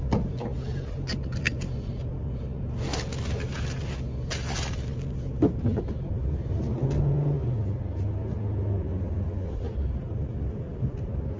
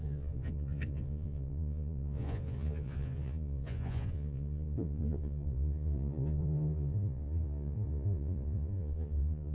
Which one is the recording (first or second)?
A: first